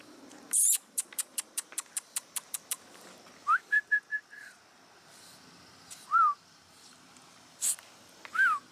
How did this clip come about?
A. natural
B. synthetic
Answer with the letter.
B